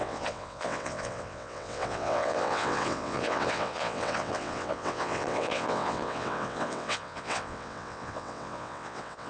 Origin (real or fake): fake